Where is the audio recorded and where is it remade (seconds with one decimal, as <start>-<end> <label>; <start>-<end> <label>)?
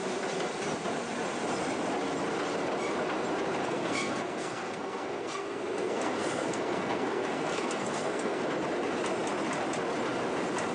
0.0-3.6 recorded; 3.6-8.4 remade; 8.4-10.7 recorded